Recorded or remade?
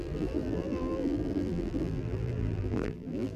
remade